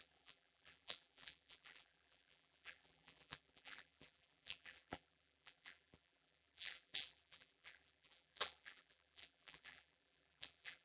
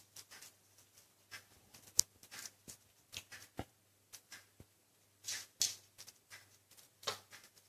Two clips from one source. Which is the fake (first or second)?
first